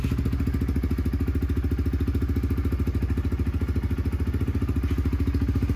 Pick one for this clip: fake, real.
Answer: real